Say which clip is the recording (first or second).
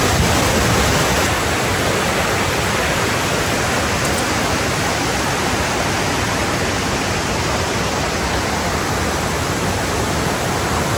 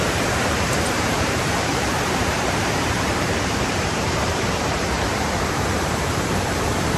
first